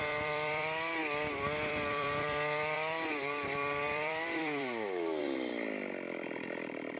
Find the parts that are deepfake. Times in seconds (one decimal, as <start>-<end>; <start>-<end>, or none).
0.0-7.0